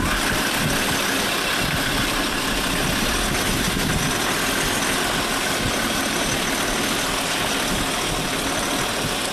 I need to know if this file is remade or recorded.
recorded